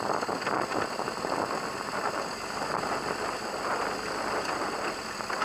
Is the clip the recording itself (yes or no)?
yes